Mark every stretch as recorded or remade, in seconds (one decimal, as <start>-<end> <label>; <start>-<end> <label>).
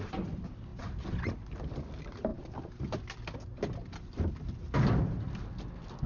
0.0-0.7 recorded; 0.7-1.3 remade; 1.3-2.3 recorded; 2.3-4.2 remade; 4.2-6.1 recorded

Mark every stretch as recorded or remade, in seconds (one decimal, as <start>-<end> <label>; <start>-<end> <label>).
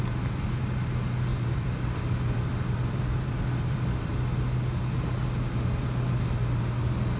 0.0-1.3 recorded; 1.3-4.1 remade; 4.1-7.2 recorded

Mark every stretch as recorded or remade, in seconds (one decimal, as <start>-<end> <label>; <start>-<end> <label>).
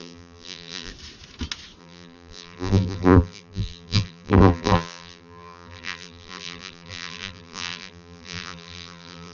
0.0-0.9 remade; 0.9-1.8 recorded; 1.8-9.3 remade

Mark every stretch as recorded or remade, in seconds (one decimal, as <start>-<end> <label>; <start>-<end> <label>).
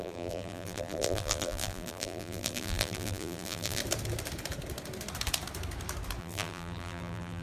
0.0-3.8 remade; 3.8-6.2 recorded; 6.2-7.4 remade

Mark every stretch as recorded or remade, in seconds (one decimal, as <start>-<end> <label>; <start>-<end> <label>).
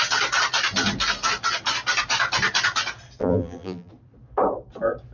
0.0-3.2 recorded; 3.2-3.9 remade; 3.9-5.1 recorded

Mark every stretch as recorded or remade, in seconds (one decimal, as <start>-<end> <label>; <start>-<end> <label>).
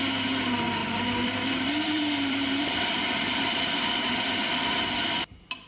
0.0-0.8 recorded; 0.8-4.2 remade; 4.2-5.7 recorded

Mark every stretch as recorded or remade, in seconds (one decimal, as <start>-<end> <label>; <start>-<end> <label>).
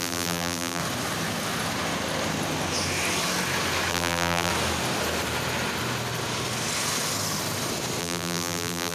0.0-0.8 remade; 0.8-3.9 recorded; 3.9-4.5 remade; 4.5-8.0 recorded; 8.0-8.9 remade